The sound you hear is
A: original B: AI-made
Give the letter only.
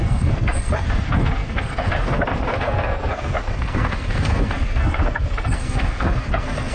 B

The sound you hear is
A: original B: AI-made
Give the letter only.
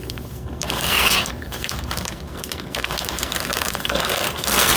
B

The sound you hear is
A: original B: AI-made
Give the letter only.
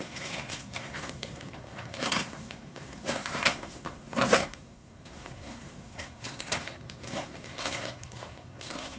B